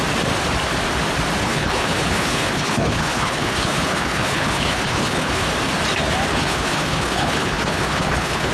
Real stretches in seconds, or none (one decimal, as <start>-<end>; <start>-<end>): 0.0-1.4; 5.4-6.3